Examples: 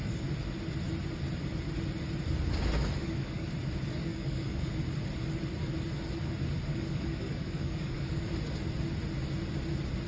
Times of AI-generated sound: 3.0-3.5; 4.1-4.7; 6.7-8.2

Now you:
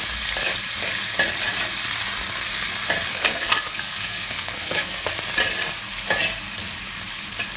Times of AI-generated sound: 3.1-5.1

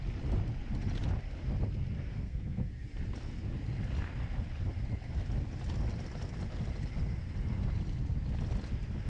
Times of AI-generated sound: 2.1-2.7

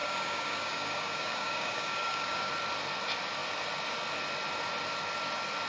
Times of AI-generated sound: 0.0-2.5